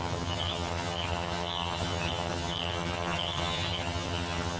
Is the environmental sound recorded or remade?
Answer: remade